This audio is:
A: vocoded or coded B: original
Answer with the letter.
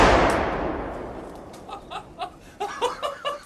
A